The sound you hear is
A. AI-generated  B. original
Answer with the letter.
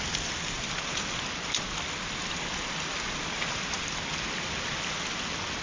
B